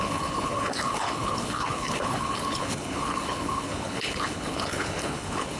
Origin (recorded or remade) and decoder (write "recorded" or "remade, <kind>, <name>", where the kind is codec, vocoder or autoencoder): remade, codec, HILCodec